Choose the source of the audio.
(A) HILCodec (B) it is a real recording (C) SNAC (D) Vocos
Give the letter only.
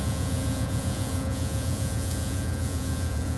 D